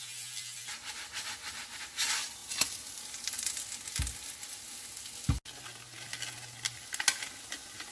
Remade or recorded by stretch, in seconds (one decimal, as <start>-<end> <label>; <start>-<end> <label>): 0.0-7.9 recorded